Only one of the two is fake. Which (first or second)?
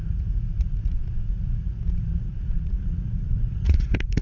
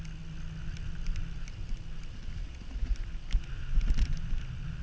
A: first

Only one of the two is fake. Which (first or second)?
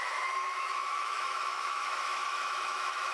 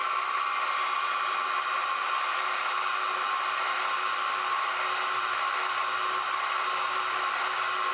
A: first